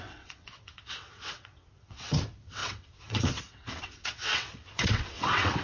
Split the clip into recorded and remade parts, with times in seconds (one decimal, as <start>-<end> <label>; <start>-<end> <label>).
0.0-5.6 remade